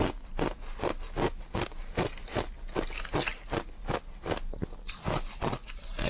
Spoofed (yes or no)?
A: no